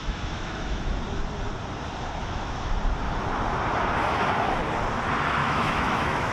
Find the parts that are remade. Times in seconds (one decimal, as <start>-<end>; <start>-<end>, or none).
0.0-0.9; 2.2-2.8; 5.4-6.3